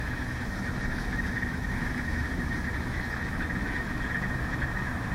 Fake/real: fake